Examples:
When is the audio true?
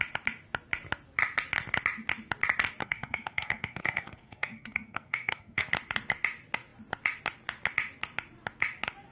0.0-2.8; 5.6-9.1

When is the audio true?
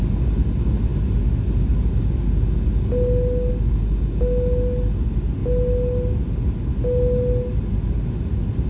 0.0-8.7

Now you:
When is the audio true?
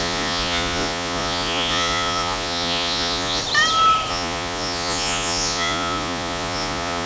3.4-4.1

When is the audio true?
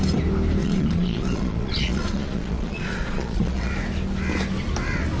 0.0-0.6; 3.7-5.2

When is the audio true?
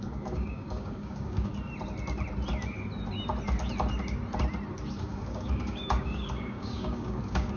1.5-5.0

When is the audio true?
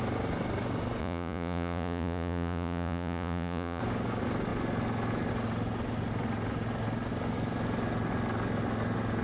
0.0-1.0; 3.8-9.2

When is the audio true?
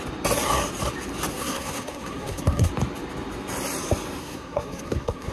0.0-1.3; 2.7-4.2